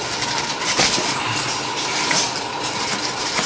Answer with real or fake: real